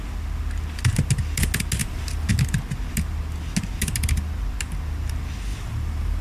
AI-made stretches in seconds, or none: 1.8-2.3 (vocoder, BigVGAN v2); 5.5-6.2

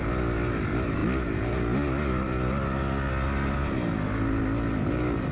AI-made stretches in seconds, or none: none

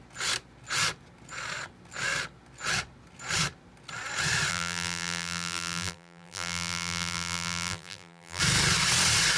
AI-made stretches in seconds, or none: 4.5-8.4 (vocoder, BigVGAN v2)

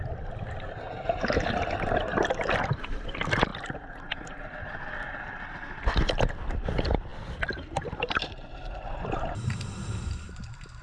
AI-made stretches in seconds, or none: 0.0-3.5 (vocoder, BigVGAN v2); 6.5-10.8

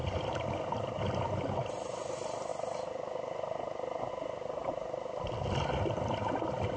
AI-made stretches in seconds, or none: none